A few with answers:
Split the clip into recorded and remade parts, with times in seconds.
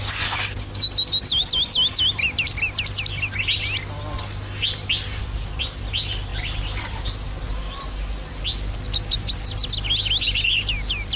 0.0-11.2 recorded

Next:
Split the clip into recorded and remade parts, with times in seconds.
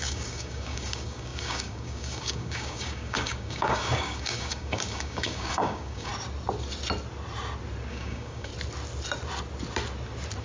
0.0-6.1 remade; 6.1-7.9 recorded; 7.9-8.5 remade; 8.5-10.4 recorded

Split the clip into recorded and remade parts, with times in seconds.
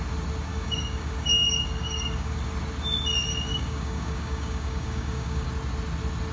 0.0-0.5 recorded; 0.5-2.4 remade; 2.4-3.5 recorded; 3.5-5.5 remade; 5.5-6.3 recorded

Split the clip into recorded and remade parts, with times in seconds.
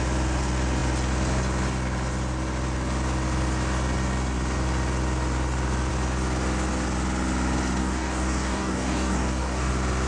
0.0-7.8 recorded; 7.8-9.7 remade; 9.7-10.1 recorded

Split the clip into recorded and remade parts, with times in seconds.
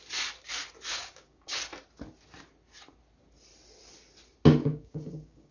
0.0-0.9 recorded; 0.9-1.6 remade; 1.6-4.6 recorded; 4.6-5.5 remade